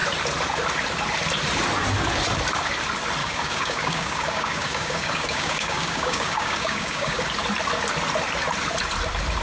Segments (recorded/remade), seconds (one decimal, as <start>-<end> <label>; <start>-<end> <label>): 0.0-3.2 recorded; 3.2-7.2 remade; 7.2-9.4 recorded